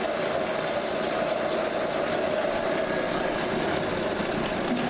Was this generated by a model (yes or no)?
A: no